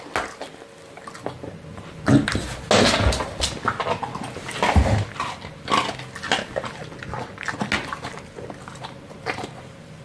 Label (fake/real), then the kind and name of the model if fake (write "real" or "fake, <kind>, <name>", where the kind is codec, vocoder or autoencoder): real